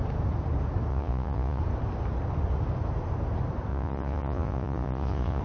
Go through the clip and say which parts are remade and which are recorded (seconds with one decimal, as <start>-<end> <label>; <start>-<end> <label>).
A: 0.0-0.9 recorded; 0.9-1.6 remade; 1.6-3.7 recorded; 3.7-5.4 remade